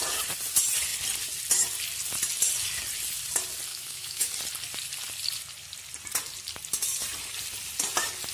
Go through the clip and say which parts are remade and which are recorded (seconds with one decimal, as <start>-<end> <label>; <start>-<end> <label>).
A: 0.0-3.7 recorded; 3.7-4.3 remade; 4.3-8.3 recorded